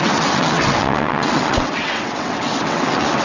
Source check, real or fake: fake